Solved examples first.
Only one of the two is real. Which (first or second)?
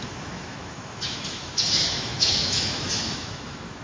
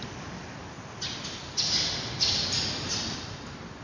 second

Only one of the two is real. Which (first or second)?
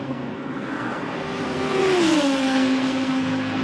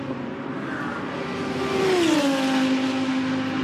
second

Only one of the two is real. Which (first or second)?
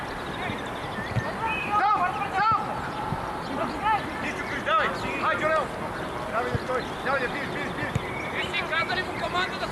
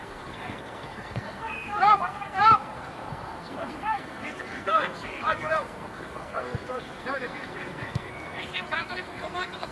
first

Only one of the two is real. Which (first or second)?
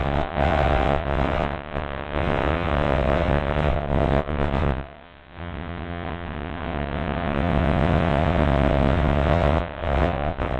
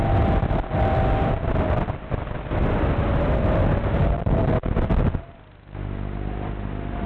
second